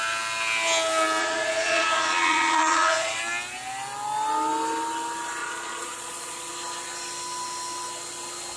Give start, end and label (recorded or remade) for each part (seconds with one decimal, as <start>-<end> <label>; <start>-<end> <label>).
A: 0.0-1.2 recorded; 1.2-3.2 remade; 3.2-5.4 recorded; 5.4-6.5 remade; 6.5-8.6 recorded